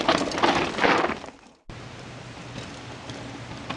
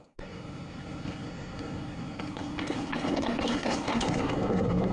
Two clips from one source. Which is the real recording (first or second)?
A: first